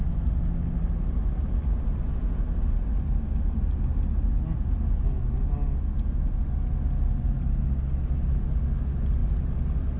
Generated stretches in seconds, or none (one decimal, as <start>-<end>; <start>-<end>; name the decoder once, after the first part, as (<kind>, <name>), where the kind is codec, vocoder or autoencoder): none